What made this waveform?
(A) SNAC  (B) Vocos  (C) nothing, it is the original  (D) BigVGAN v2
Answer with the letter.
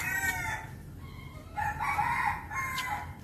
C